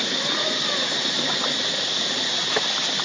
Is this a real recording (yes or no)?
yes